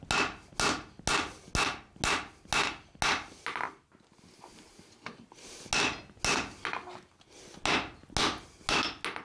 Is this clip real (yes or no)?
yes